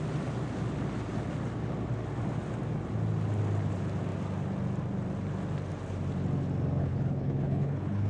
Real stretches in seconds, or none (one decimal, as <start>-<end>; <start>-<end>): 0.0-6.8